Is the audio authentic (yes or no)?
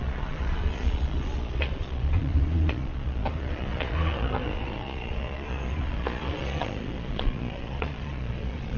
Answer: no